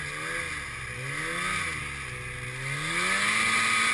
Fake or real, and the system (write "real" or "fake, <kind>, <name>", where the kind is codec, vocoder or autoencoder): real